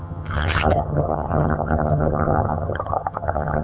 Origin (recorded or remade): remade